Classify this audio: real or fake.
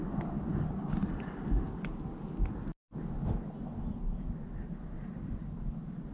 real